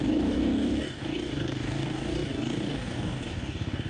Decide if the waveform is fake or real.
fake